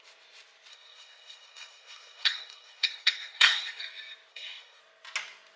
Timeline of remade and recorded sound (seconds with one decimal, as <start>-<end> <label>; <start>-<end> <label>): 0.0-0.7 recorded; 0.7-3.8 remade; 3.8-4.3 recorded; 4.3-4.8 remade; 4.8-5.6 recorded